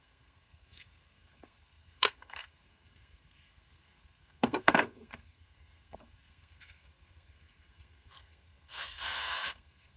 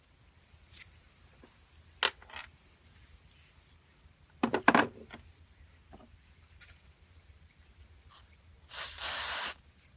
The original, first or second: second